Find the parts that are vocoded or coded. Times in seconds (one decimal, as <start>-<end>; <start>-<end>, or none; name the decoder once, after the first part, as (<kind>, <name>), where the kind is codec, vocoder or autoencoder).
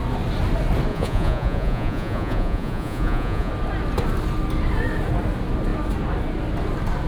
0.9-3.5 (vocoder, Vocos)